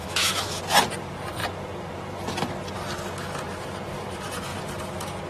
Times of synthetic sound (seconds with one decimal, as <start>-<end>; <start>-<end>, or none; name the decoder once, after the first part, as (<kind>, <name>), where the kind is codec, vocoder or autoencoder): 0.0-0.6 (autoencoder, DAC-VAE)